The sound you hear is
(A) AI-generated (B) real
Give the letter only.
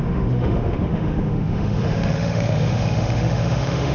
A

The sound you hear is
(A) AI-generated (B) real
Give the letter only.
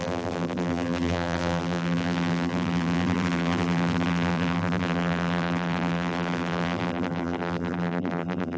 A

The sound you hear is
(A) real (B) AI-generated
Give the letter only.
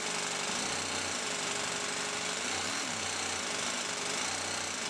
A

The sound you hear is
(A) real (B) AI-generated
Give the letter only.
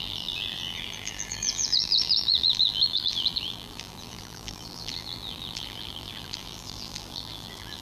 B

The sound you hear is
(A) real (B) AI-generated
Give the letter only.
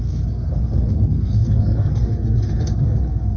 B